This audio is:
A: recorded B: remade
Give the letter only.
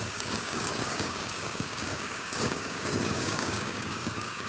B